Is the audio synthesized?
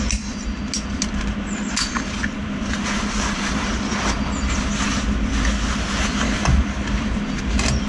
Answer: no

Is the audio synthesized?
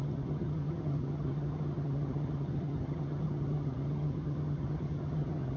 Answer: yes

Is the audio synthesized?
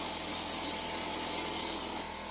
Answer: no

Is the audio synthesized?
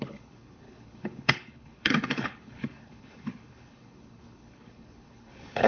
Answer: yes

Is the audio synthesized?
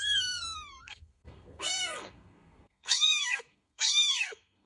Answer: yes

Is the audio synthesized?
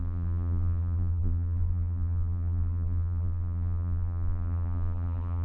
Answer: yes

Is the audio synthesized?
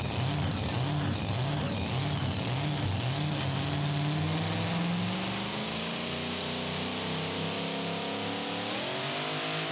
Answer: no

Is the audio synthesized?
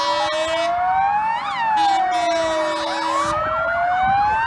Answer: no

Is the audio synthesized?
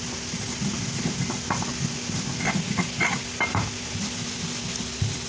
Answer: no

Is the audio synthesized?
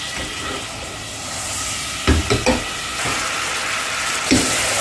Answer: no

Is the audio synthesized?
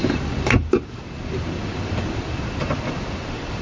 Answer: yes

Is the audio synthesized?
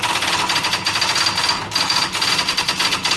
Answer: no